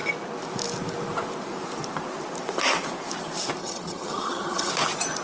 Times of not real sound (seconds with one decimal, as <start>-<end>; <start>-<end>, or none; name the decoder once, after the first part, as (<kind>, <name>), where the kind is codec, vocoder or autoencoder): 3.6-4.7 (vocoder, HiFi-GAN)